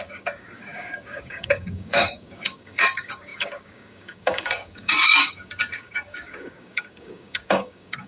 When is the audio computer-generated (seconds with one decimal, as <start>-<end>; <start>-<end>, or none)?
0.0-8.1